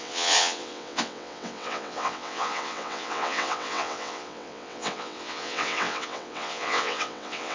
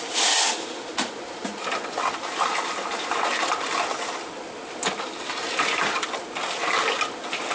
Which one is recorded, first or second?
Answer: second